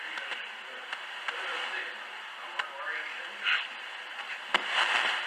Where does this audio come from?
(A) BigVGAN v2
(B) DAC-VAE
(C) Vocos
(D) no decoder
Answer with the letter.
D